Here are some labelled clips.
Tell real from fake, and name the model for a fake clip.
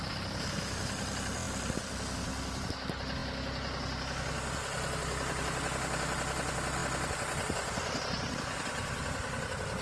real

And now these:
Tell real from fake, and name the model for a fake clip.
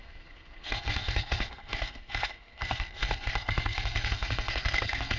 fake, codec, SNAC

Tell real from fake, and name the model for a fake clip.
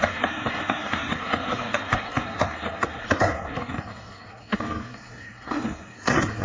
fake, codec, SNAC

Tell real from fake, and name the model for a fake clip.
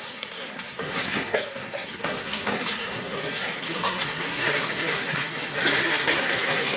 fake, codec, SNAC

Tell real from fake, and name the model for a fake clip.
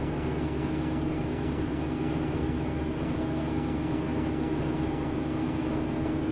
fake, codec, SNAC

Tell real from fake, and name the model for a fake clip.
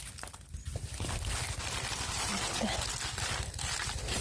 real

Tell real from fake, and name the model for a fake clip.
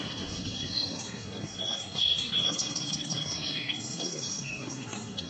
fake, codec, SNAC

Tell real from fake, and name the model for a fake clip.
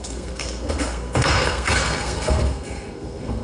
fake, codec, SNAC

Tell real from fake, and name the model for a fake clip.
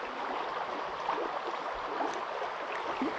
real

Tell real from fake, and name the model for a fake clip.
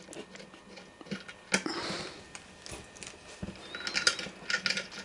real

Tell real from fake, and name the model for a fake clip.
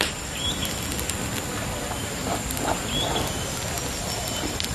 real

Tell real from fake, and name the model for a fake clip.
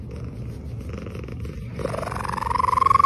real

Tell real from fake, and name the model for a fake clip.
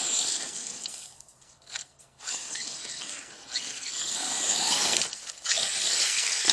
fake, codec, SNAC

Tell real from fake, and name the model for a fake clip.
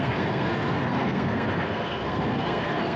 fake, codec, SNAC